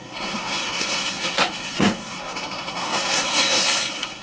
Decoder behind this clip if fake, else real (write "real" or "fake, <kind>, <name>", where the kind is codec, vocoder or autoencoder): fake, codec, SNAC